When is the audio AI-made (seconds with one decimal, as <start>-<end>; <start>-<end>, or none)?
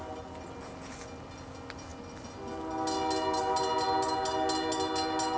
none